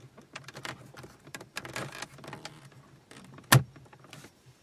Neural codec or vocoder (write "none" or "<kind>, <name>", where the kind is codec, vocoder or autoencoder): none